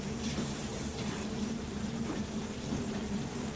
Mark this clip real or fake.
fake